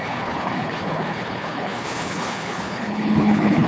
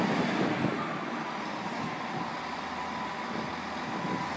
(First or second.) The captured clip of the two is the second